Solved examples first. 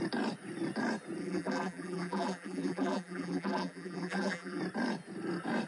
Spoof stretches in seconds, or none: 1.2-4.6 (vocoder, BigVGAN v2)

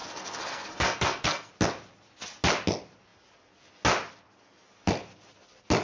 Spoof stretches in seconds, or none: 0.0-1.5 (codec, SNAC)

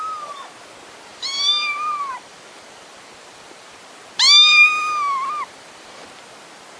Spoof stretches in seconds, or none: 1.1-3.9 (vocoder, BigVGAN v2); 4.5-6.0

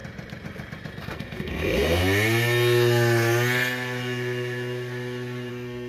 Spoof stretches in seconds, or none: 1.0-2.0 (codec, SNAC); 5.5-5.9

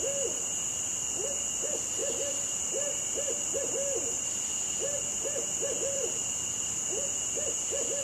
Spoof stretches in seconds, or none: 2.0-6.1 (vocoder, BigVGAN v2)

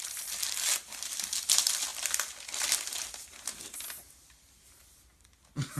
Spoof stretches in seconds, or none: none